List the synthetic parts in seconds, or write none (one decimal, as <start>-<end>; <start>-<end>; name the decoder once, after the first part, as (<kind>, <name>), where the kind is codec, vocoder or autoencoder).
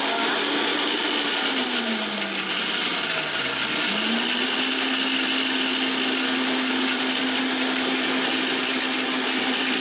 none